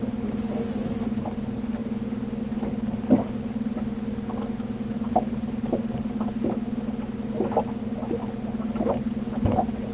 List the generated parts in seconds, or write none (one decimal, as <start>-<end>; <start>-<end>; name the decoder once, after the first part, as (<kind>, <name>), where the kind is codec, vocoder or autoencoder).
none

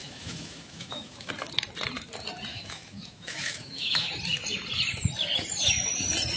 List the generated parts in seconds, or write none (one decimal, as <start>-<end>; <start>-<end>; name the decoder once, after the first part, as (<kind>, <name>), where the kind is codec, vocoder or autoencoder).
0.0-1.3 (autoencoder, DAC-VAE); 2.5-4.1

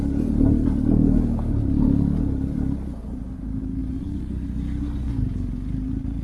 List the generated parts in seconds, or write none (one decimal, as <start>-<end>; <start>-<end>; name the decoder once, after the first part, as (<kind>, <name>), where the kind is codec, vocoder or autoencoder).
none

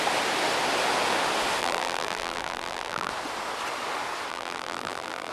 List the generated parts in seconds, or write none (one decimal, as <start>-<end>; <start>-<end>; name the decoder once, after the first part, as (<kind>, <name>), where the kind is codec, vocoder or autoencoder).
1.6-3.1 (vocoder, BigVGAN v2); 4.3-5.3